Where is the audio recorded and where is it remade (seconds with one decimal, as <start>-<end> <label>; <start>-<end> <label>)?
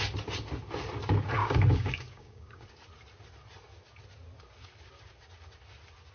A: 0.0-1.4 recorded; 1.4-2.7 remade; 2.7-6.1 recorded